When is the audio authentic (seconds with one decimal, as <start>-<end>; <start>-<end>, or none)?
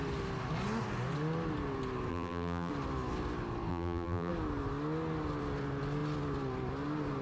0.0-2.1; 2.7-3.7; 4.3-7.2